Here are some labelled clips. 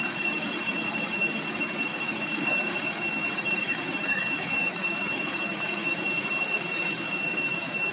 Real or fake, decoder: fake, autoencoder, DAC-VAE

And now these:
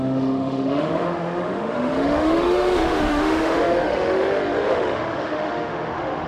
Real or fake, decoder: fake, autoencoder, DAC-VAE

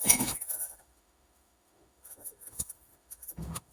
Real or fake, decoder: fake, autoencoder, DAC-VAE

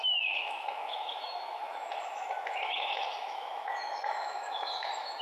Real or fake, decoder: fake, autoencoder, DAC-VAE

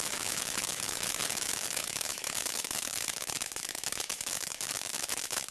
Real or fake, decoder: fake, autoencoder, DAC-VAE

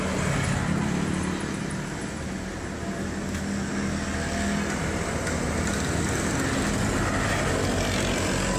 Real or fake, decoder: real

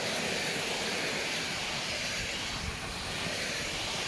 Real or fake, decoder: real